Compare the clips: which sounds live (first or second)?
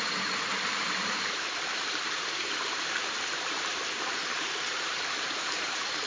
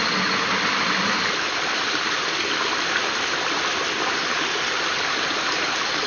second